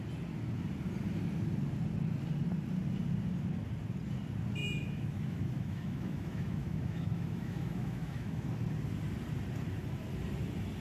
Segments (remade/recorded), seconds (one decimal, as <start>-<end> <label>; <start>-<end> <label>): 0.0-4.6 recorded; 4.6-8.5 remade; 8.5-10.8 recorded

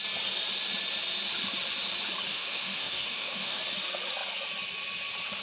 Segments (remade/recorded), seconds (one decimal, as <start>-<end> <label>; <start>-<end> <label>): 0.0-2.3 recorded; 2.3-3.6 remade; 3.6-5.4 recorded

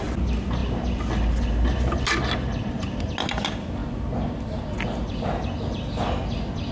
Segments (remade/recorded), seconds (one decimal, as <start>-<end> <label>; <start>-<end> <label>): 0.0-6.7 recorded

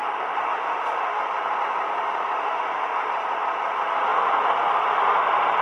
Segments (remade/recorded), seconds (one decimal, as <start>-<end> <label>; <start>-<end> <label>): 0.0-1.2 remade; 1.2-2.4 recorded; 2.4-3.1 remade; 3.1-5.6 recorded

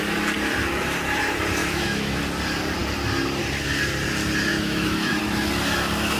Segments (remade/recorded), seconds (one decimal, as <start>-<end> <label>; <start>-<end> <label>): 0.0-1.6 recorded; 1.6-2.2 remade; 2.2-4.5 recorded; 4.5-5.2 remade; 5.2-6.2 recorded

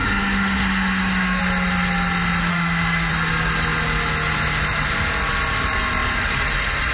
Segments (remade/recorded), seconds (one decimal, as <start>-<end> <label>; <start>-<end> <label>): 0.0-1.4 remade; 1.4-2.5 recorded; 2.5-3.1 remade; 3.1-6.9 recorded

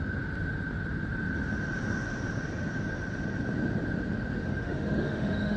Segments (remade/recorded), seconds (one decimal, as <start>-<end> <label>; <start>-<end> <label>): 0.0-4.4 recorded; 4.4-5.6 remade